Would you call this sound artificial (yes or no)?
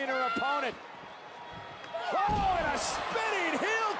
no